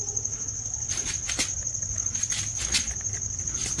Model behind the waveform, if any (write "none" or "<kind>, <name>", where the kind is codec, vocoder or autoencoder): none